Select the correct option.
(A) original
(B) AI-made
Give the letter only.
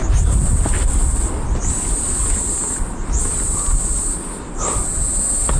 A